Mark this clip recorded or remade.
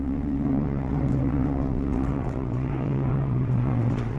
remade